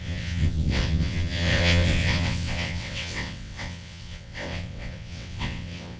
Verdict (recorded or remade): remade